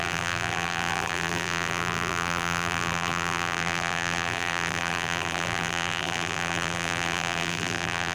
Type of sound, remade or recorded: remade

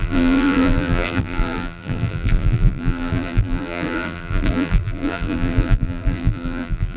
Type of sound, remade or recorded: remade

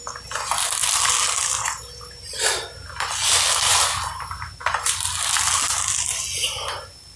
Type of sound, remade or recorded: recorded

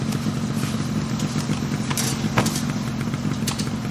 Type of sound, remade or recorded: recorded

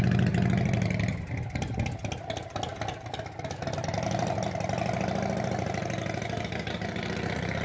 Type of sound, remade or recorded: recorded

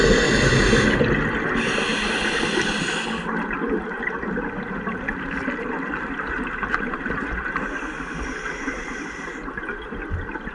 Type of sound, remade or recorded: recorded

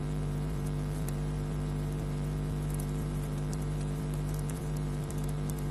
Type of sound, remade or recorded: remade